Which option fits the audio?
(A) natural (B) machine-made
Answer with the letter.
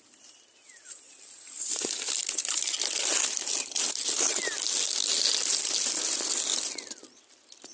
A